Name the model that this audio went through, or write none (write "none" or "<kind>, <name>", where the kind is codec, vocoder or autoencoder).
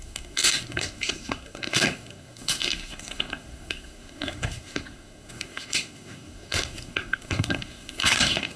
codec, SNAC